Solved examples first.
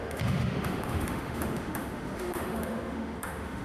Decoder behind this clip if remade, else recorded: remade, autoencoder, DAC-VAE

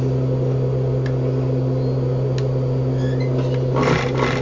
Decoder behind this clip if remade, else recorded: recorded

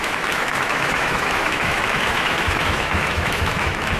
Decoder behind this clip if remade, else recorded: remade, autoencoder, DAC-VAE